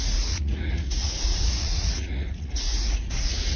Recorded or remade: remade